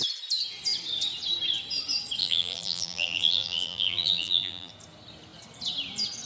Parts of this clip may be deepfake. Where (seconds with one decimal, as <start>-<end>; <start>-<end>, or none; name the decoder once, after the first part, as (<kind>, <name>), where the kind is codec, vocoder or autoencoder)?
2.2-4.7 (vocoder, BigVGAN v2)